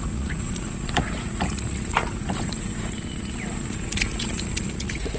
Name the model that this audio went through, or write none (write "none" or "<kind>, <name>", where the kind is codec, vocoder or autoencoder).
vocoder, Vocos